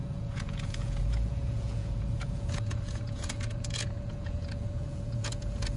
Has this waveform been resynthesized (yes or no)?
yes